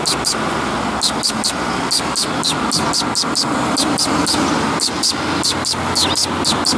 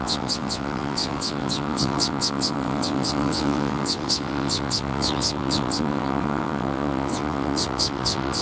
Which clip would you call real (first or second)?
first